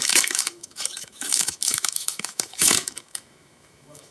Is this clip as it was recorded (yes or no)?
no